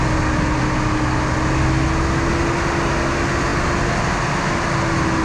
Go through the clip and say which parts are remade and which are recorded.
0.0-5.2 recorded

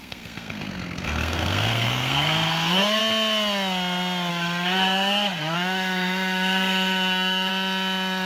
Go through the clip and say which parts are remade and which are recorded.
0.0-3.0 remade; 3.0-4.3 recorded; 4.3-7.5 remade; 7.5-8.3 recorded

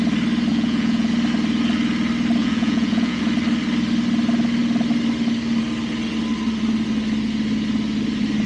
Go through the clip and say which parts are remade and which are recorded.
0.0-0.5 recorded; 0.5-1.1 remade; 1.1-2.4 recorded; 2.4-3.2 remade; 3.2-8.5 recorded

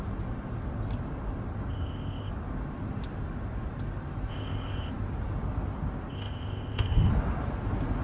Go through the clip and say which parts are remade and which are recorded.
0.0-1.7 recorded; 1.7-2.3 remade; 2.3-4.3 recorded; 4.3-4.9 remade; 4.9-6.1 recorded; 6.1-7.1 remade; 7.1-8.0 recorded

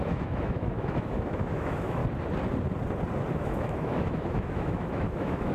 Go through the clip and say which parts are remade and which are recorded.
0.0-2.0 remade; 2.0-3.3 recorded; 3.3-5.5 remade

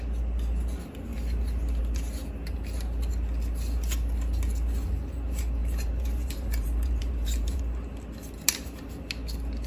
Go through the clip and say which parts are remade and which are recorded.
0.0-5.6 recorded; 5.6-7.6 remade; 7.6-9.7 recorded